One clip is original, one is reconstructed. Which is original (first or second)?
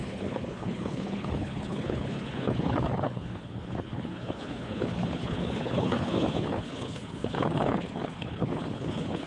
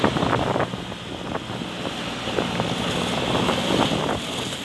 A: second